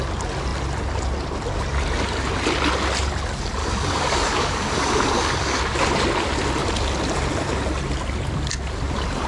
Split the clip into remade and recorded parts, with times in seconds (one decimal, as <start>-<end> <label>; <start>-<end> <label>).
0.0-3.6 recorded; 3.6-5.6 remade; 5.6-9.3 recorded